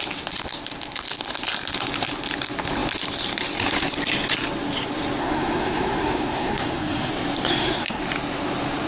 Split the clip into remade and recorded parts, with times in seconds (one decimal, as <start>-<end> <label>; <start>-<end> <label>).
0.0-5.2 recorded; 5.2-7.1 remade; 7.1-7.5 recorded; 7.5-8.0 remade; 8.0-8.9 recorded